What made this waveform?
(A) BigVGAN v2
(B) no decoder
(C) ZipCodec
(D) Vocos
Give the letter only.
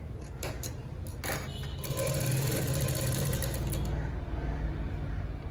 B